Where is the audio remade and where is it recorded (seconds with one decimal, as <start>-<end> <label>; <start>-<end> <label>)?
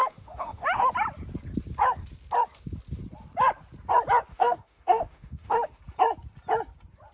0.0-0.9 remade; 0.9-4.3 recorded; 4.3-5.8 remade; 5.8-7.1 recorded